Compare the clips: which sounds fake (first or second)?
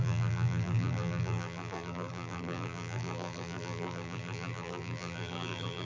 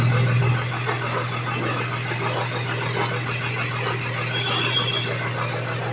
first